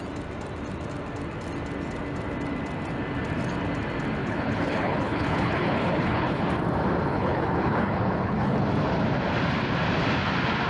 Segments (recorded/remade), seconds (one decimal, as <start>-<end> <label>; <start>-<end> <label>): 0.0-4.2 recorded; 4.2-6.4 remade; 6.4-7.1 recorded; 7.1-8.6 remade; 8.6-10.7 recorded